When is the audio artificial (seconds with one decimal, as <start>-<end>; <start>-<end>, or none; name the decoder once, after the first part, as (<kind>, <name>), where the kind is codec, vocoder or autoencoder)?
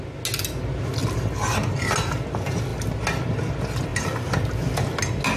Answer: none